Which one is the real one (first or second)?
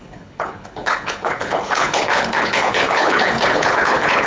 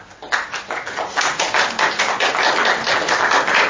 second